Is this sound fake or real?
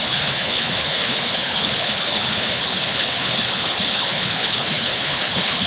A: fake